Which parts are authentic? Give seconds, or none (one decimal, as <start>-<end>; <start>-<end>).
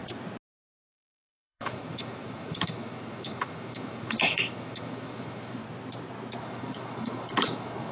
0.0-0.9; 5.6-6.4